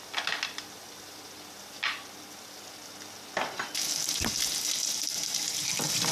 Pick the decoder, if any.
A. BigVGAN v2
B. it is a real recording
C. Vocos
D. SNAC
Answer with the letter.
B